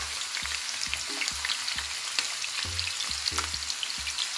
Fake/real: real